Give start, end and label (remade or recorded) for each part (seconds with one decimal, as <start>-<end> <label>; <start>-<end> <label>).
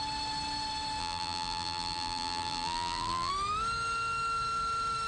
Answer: 0.0-1.0 recorded; 1.0-3.3 remade; 3.3-5.1 recorded